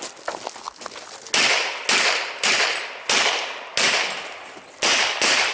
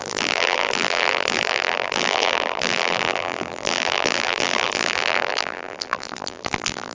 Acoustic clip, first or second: first